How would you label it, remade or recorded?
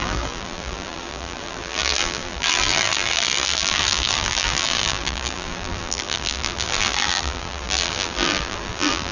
remade